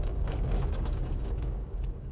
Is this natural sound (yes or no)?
no